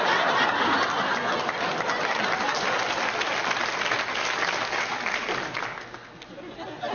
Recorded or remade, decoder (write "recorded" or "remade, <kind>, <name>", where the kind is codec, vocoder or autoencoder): recorded